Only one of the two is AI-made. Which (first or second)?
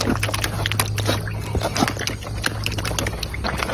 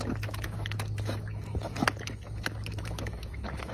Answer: second